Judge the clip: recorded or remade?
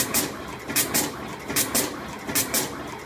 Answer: recorded